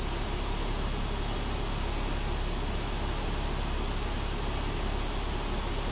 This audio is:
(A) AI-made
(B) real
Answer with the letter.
B